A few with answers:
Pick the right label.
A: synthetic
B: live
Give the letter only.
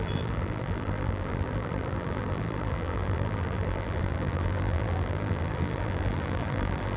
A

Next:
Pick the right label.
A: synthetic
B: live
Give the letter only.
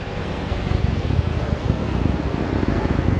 A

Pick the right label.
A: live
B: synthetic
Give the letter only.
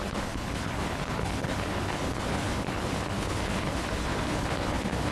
B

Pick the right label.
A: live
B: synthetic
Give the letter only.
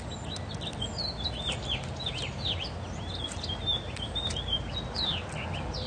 A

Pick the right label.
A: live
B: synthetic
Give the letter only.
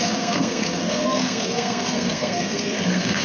B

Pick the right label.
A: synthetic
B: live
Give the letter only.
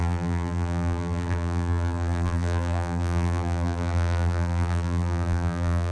A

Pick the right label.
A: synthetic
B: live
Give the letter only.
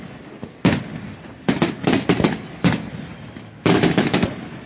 B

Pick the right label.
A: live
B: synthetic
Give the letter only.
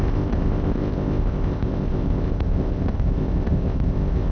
B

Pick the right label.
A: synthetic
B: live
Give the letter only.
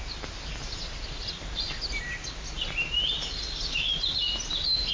B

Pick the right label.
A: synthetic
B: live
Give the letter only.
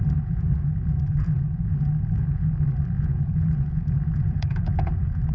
A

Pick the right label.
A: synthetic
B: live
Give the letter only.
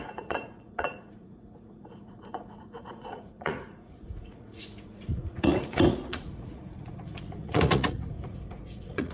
A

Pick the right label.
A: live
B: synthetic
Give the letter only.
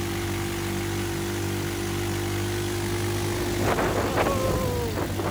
A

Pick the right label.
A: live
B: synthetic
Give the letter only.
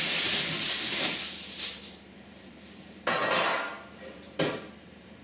B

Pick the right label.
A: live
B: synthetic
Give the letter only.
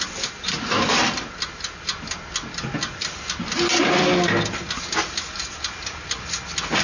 A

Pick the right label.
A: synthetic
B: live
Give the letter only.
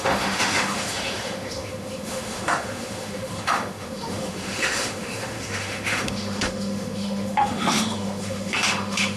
A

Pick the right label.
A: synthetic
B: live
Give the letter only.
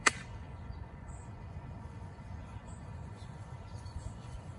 A